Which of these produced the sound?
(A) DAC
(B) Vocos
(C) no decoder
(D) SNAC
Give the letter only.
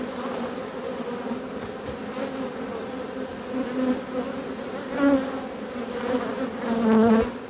C